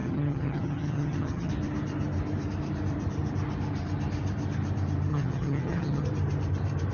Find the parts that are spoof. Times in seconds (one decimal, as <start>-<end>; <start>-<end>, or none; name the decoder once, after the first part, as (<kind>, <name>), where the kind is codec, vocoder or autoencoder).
0.0-1.5 (vocoder, HiFi-GAN); 5.1-6.0